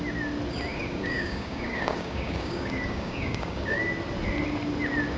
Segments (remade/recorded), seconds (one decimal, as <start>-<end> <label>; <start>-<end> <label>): 0.0-0.7 recorded; 0.7-3.8 remade; 3.8-5.2 recorded